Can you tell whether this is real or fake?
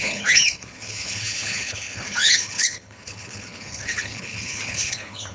fake